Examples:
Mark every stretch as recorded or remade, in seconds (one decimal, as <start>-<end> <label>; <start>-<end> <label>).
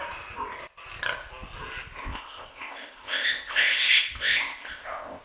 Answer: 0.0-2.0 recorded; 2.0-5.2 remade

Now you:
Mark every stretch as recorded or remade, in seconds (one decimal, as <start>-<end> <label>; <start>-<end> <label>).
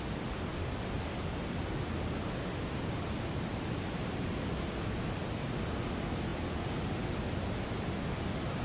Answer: 0.0-2.5 recorded; 2.5-4.7 remade; 4.7-8.6 recorded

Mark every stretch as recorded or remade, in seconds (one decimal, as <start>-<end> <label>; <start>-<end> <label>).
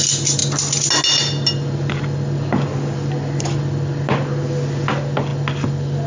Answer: 0.0-6.1 recorded